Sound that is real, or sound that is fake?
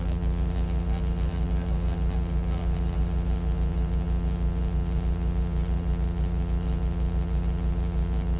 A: fake